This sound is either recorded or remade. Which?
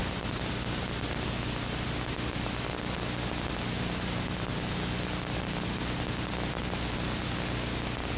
recorded